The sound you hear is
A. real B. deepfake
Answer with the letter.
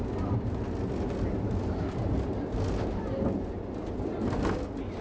A